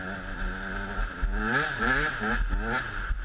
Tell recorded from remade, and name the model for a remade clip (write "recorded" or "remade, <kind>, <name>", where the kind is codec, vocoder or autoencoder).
recorded